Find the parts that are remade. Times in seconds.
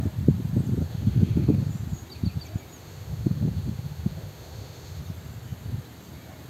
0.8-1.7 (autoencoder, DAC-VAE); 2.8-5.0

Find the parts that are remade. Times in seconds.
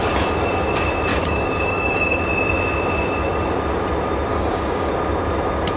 1.1-2.2 (codec, DAC); 4.3-4.9